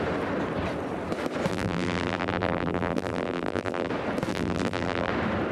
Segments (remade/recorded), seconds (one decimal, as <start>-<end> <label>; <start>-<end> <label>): 0.0-1.5 recorded; 1.5-3.9 remade; 3.9-4.3 recorded; 4.3-5.1 remade; 5.1-5.5 recorded